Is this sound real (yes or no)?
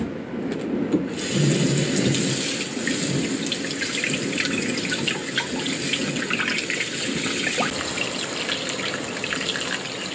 yes